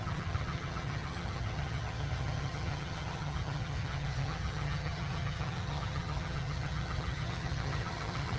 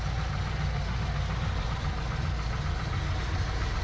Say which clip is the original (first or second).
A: second